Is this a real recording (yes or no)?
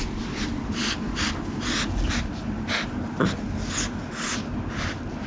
yes